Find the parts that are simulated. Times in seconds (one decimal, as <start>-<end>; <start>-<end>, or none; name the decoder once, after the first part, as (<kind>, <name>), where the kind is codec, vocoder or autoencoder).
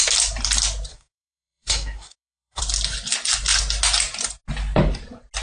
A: 0.9-2.6 (codec, SNAC)